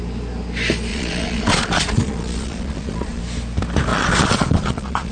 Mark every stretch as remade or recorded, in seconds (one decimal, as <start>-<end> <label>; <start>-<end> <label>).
0.0-0.9 recorded; 0.9-3.2 remade; 3.2-3.9 recorded; 3.9-5.1 remade